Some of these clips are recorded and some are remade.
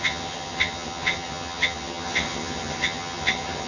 remade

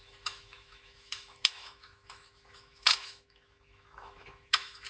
remade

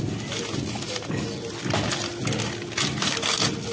recorded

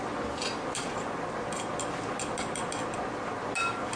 recorded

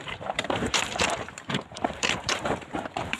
remade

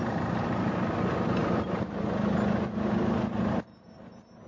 recorded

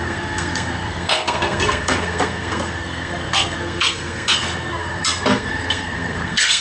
remade